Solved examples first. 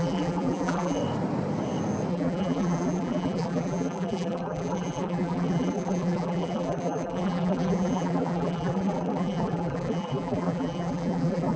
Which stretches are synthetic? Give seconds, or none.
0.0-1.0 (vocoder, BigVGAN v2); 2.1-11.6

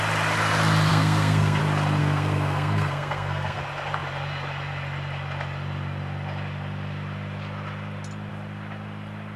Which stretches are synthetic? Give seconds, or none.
0.9-1.6 (codec, SNAC); 2.0-3.6

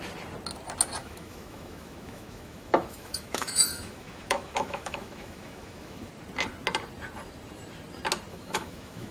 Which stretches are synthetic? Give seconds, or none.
1.0-6.1 (autoencoder, DAC-VAE); 8.3-9.1